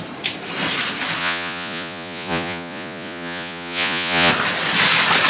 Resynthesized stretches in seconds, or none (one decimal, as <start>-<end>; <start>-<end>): 1.2-4.3

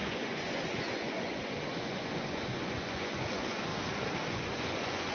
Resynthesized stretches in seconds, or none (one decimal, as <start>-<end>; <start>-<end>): 0.0-3.7; 4.3-5.1

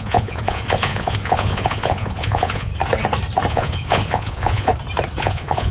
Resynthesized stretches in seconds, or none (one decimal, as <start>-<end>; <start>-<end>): 0.0-2.7; 3.5-4.7; 5.2-5.7

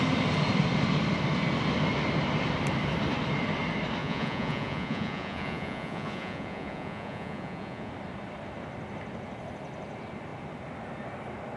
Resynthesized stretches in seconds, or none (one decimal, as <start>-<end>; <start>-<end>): 4.0-7.9

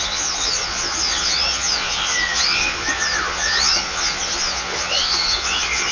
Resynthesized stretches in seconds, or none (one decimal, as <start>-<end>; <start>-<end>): 0.0-5.9

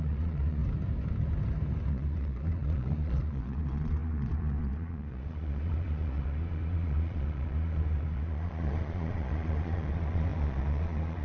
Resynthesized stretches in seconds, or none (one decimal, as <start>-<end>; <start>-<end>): 0.0-0.6; 1.9-11.2

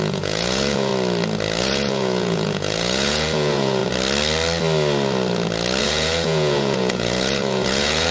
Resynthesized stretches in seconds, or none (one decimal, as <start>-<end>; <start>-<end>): 0.0-0.9; 1.6-3.8; 5.8-8.1